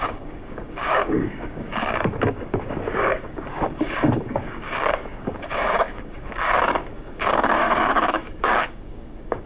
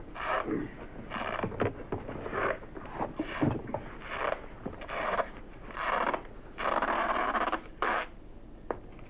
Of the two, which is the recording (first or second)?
second